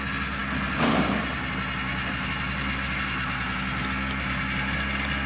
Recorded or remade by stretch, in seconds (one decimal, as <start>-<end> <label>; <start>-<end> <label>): 0.0-5.3 recorded